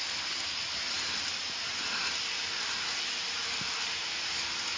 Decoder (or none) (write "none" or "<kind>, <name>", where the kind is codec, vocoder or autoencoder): none